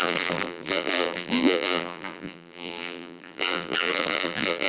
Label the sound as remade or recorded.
remade